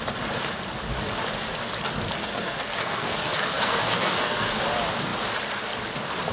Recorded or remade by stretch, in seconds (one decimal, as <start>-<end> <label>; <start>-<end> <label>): 0.0-2.2 recorded; 2.2-4.6 remade; 4.6-6.3 recorded